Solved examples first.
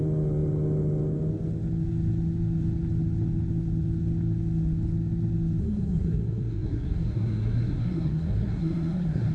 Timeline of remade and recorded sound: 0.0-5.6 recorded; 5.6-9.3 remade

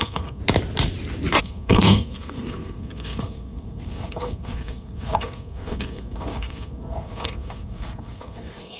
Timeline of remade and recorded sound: 0.0-0.4 remade; 0.4-1.4 recorded; 1.4-8.8 remade